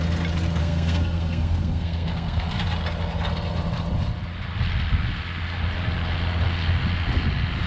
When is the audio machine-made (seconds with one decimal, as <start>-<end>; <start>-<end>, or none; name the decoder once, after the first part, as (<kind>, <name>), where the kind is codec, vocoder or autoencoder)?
0.6-2.6 (codec, SNAC)